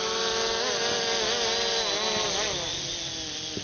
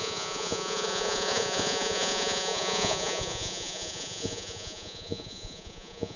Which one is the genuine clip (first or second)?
first